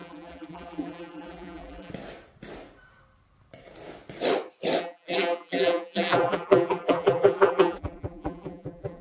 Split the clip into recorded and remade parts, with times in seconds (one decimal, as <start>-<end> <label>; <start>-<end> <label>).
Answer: 0.0-1.9 remade; 1.9-4.8 recorded; 4.8-9.0 remade